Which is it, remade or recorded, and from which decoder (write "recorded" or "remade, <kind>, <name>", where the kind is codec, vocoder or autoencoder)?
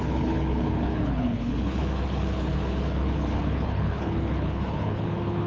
remade, codec, HILCodec